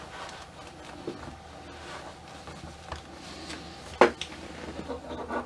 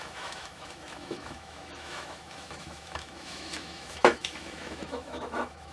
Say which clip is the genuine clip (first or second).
first